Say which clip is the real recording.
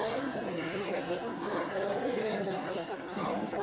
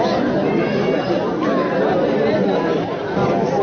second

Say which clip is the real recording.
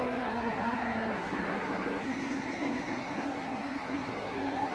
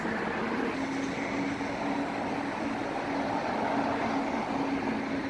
second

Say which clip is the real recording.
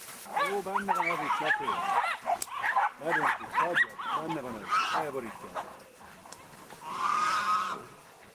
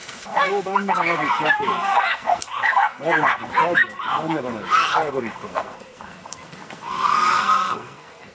first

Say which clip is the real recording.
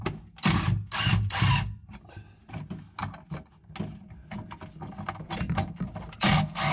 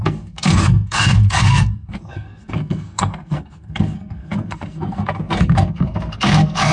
first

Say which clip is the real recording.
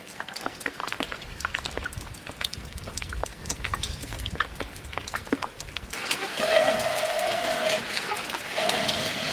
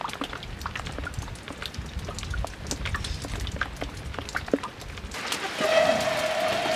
second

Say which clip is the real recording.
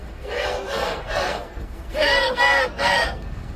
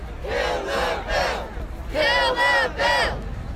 second